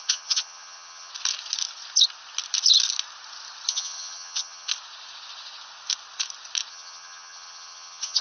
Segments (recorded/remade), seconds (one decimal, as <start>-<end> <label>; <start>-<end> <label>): 0.0-1.1 remade; 1.1-3.7 recorded; 3.7-4.7 remade; 4.7-6.7 recorded; 6.7-8.2 remade